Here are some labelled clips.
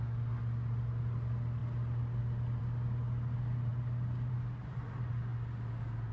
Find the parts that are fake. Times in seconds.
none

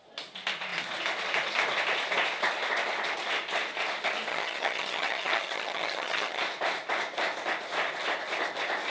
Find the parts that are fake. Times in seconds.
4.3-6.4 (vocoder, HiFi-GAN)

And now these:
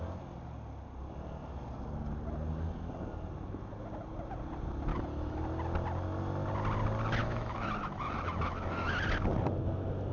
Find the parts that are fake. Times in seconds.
4.9-5.4 (autoencoder, DAC-VAE); 7.2-8.9